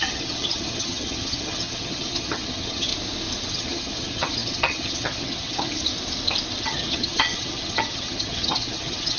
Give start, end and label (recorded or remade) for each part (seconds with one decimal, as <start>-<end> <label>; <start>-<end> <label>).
0.0-2.9 remade; 2.9-3.5 recorded; 3.5-5.9 remade; 5.9-6.6 recorded; 6.6-9.2 remade